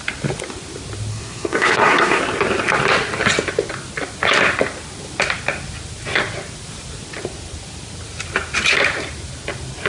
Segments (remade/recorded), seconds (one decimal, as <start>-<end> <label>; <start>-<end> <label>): 0.0-1.1 recorded; 1.1-2.2 remade; 2.2-9.9 recorded